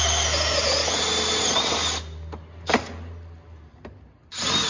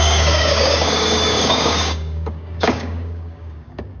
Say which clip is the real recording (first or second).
first